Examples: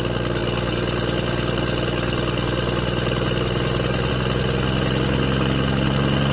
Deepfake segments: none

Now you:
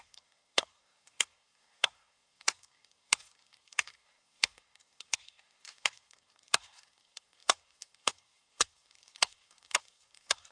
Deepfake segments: 0.0-10.5